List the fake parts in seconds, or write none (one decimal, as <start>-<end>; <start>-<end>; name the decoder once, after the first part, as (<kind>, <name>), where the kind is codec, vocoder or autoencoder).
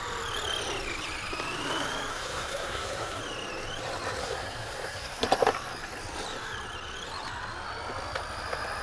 2.1-3.2 (codec, SNAC); 4.2-5.2